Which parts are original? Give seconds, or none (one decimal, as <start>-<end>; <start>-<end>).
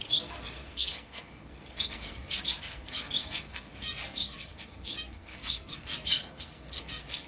none